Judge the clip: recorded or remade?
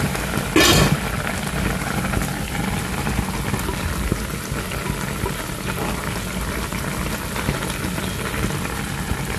recorded